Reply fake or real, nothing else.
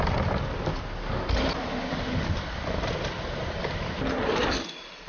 real